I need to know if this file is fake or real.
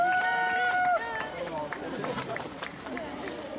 fake